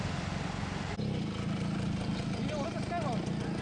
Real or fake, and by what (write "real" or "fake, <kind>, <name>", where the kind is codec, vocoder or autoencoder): real